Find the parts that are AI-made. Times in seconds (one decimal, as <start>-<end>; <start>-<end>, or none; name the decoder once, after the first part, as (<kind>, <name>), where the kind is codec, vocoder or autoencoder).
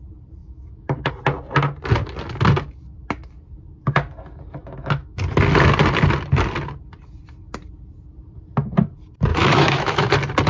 0.4-1.1 (autoencoder, DAC-VAE); 4.6-5.2; 9.3-10.1